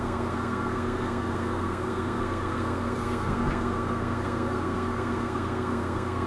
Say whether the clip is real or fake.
fake